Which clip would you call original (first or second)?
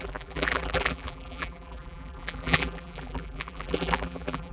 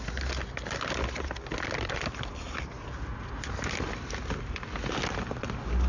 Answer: second